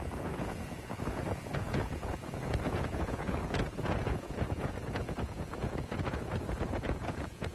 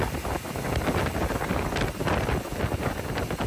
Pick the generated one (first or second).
first